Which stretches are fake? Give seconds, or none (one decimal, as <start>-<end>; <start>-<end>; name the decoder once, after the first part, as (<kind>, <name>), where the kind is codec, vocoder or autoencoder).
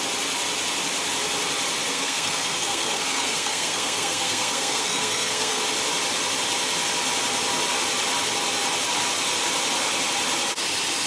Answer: 1.9-5.6 (codec, SNAC)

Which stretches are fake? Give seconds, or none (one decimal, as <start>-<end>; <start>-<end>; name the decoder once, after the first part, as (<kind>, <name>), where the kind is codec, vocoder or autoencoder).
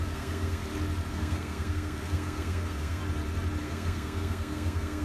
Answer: 0.0-0.6 (codec, SNAC); 1.1-3.0; 3.6-5.0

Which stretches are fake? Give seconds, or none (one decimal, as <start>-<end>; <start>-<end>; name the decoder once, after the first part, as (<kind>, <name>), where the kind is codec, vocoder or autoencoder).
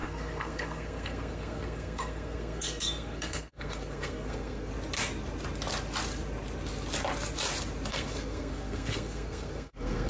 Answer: 0.0-4.7 (codec, SNAC); 7.9-10.1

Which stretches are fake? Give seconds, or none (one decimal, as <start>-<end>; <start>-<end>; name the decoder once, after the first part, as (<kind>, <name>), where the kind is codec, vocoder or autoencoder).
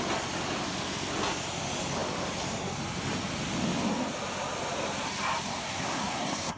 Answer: 5.6-6.6 (codec, SNAC)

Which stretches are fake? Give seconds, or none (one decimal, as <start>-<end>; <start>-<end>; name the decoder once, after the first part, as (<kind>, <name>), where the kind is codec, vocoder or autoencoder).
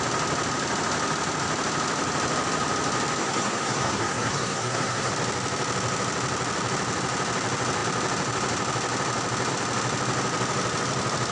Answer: 3.2-5.1 (codec, SNAC)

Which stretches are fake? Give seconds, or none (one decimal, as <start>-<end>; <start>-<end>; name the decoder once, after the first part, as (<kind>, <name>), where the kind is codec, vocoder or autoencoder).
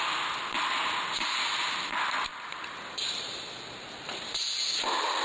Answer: none